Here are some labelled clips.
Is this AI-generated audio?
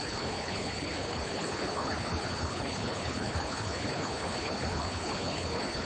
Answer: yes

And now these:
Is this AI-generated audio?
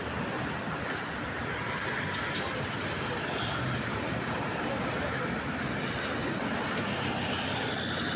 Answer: no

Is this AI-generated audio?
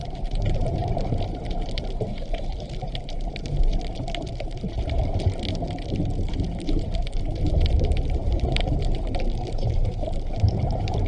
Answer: yes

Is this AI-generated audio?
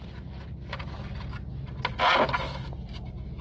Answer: no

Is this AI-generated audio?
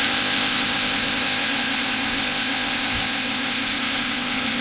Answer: yes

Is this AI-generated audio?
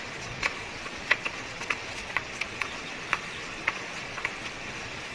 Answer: yes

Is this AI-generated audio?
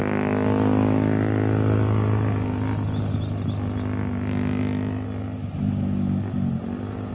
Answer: no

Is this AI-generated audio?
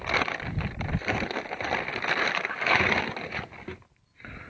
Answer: no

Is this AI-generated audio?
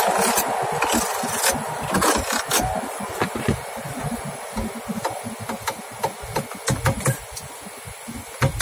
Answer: no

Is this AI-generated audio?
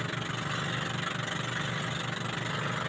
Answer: no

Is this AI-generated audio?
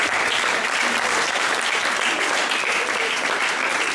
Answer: yes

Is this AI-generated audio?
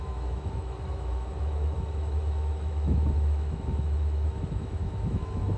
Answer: yes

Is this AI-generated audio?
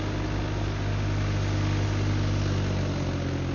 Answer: no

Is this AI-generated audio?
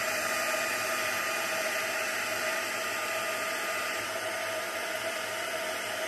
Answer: no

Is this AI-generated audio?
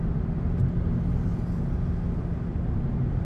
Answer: no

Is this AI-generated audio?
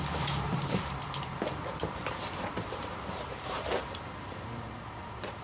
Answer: yes